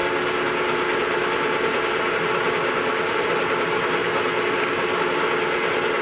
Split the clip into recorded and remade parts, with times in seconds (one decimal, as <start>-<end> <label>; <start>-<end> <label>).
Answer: 0.0-6.0 recorded